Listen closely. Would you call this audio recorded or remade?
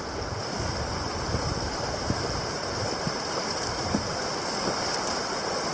recorded